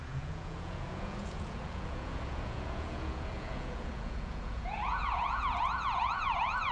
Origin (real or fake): fake